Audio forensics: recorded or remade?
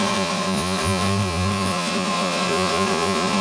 remade